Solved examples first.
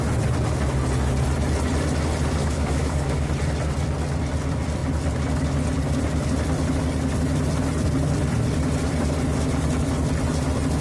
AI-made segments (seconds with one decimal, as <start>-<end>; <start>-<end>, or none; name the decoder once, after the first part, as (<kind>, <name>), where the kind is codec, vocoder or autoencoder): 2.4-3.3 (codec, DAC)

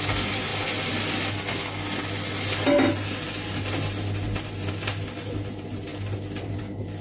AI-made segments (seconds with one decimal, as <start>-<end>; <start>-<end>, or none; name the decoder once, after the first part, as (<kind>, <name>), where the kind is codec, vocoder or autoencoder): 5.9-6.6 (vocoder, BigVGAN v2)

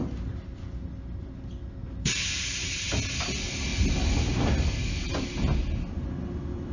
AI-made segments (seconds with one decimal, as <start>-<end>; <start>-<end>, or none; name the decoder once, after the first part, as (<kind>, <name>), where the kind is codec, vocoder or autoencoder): 1.8-2.4 (vocoder, BigVGAN v2)

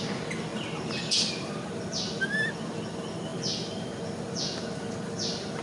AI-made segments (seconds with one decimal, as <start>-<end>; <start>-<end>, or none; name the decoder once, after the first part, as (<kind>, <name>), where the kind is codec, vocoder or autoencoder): none

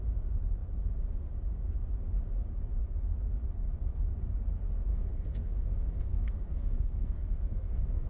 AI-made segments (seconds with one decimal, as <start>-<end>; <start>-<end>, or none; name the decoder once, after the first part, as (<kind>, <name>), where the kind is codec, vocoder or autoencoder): 4.9-8.1 (codec, SNAC)

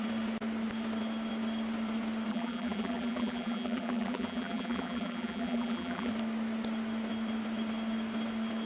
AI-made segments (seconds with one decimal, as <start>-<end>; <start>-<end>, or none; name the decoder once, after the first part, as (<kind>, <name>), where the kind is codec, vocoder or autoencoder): 2.3-6.1 (vocoder, BigVGAN v2)